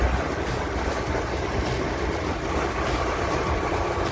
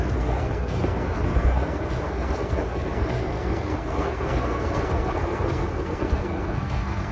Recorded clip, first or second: first